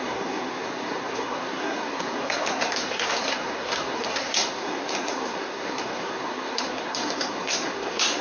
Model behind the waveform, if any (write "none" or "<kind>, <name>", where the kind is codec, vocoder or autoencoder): codec, SNAC